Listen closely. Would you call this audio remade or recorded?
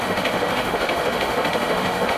remade